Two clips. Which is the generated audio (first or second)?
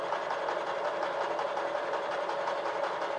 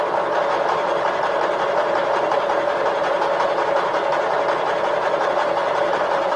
second